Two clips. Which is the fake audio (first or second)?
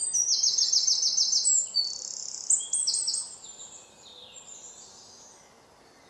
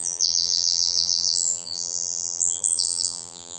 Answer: second